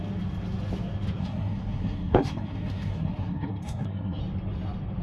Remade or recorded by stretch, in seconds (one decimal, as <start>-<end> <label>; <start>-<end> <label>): 0.0-1.2 recorded; 1.2-4.2 remade; 4.2-5.0 recorded